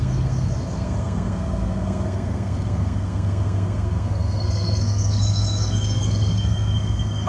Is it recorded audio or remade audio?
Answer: remade